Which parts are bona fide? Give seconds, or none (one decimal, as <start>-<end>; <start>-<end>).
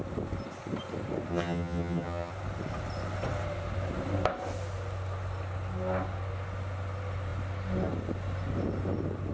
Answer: 0.0-1.3; 2.3-9.3